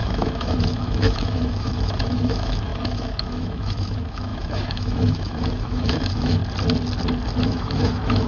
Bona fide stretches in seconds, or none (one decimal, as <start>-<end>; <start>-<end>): 6.4-7.4